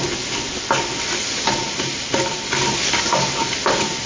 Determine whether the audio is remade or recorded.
recorded